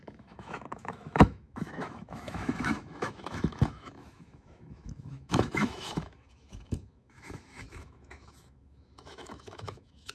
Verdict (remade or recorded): remade